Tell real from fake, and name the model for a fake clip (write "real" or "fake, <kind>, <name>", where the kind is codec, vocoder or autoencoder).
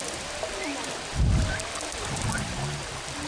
real